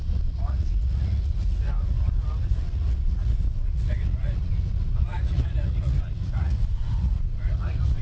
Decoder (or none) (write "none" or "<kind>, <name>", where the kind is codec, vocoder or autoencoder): vocoder, Vocos